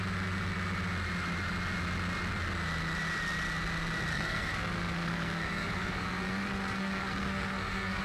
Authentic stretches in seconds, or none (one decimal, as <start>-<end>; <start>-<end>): 0.0-4.1

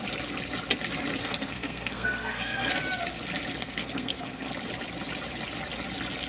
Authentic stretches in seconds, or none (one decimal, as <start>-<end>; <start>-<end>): 0.0-1.2; 2.7-3.6; 4.5-6.3

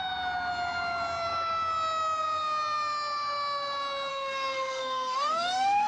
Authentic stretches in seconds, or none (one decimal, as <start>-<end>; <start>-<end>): 0.0-4.1

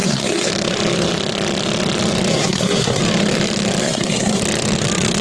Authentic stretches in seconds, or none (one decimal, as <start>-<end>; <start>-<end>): 0.5-2.3; 3.0-3.8; 4.4-5.2

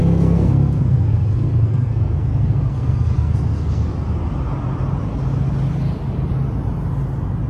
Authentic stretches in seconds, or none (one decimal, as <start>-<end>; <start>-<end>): 3.9-7.5